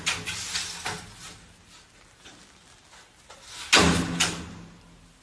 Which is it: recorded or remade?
recorded